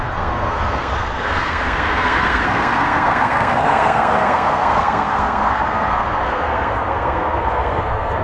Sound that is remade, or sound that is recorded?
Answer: remade